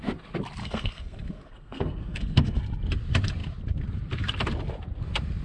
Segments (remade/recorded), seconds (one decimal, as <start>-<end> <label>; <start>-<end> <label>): 0.0-0.6 recorded; 0.6-2.6 remade; 2.6-5.4 recorded